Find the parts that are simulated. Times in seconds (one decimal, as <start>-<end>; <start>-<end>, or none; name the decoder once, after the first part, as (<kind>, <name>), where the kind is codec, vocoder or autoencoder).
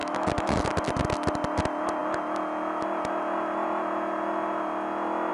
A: 0.0-0.7 (autoencoder, DAC-VAE)